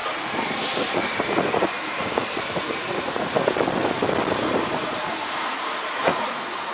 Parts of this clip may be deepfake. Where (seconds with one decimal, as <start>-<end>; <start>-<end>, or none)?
0.0-3.3; 4.4-6.7